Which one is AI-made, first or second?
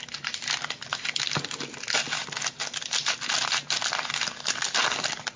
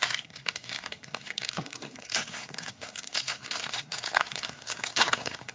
second